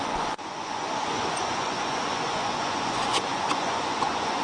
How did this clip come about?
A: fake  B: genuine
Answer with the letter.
A